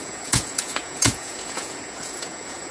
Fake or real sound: fake